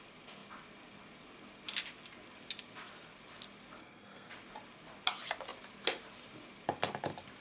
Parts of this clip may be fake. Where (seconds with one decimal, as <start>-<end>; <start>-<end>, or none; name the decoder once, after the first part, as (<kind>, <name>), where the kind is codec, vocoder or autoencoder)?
3.8-4.3 (codec, SNAC)